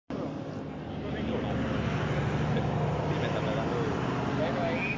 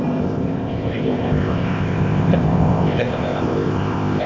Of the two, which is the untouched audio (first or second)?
first